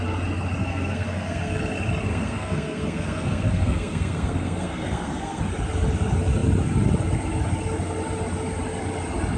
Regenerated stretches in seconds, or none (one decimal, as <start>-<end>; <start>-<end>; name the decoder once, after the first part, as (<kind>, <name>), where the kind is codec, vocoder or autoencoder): 0.6-1.6 (codec, SNAC); 2.1-5.4